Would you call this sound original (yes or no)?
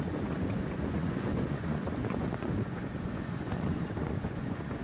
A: no